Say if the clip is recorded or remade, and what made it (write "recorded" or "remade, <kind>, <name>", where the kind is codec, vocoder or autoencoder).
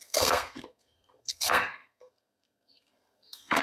remade, codec, SNAC